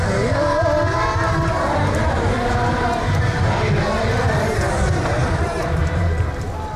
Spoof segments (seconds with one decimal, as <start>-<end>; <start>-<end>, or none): 5.2-5.8